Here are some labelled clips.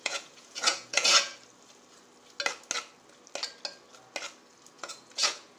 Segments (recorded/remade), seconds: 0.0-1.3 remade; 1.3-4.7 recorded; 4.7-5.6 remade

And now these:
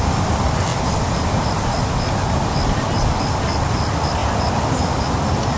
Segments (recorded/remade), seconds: 0.0-5.6 recorded

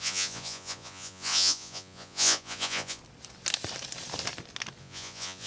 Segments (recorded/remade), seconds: 0.0-3.0 remade; 3.0-4.8 recorded; 4.8-5.5 remade

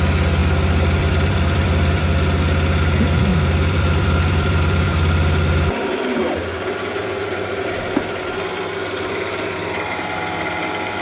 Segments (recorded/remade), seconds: 0.0-0.4 recorded; 0.4-2.0 remade; 2.0-3.3 recorded; 3.3-6.3 remade; 6.3-7.0 recorded; 7.0-8.3 remade; 8.3-11.0 recorded

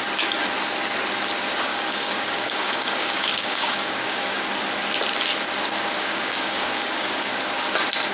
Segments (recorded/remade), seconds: 0.0-1.7 recorded; 1.7-4.4 remade; 4.4-6.0 recorded; 6.0-7.3 remade; 7.3-8.1 recorded

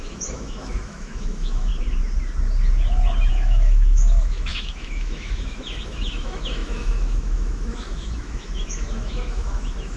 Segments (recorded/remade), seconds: 0.0-1.7 remade; 1.7-3.3 recorded; 3.3-10.0 remade